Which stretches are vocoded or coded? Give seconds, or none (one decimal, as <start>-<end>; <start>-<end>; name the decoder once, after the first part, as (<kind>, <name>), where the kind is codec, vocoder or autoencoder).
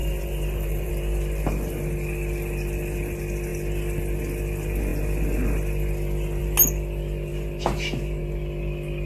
0.0-0.9 (vocoder, BigVGAN v2)